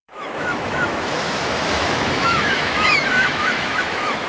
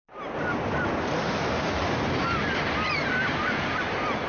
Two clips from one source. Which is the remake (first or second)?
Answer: first